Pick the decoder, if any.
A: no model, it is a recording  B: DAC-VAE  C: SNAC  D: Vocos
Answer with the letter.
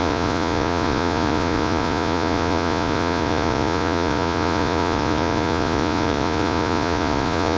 D